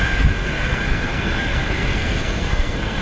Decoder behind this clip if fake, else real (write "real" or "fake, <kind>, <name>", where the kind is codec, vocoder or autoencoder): fake, codec, SNAC